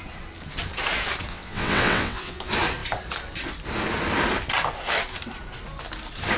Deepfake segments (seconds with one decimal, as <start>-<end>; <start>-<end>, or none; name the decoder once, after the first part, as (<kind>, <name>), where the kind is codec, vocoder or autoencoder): 1.3-2.4 (vocoder, WaveNeXt)